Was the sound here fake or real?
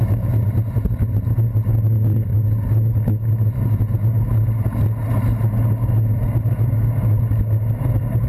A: real